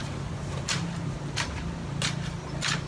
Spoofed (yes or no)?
no